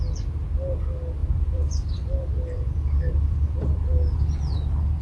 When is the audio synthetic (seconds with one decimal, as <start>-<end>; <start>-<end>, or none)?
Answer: 1.2-4.2